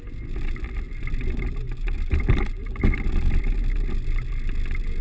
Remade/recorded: recorded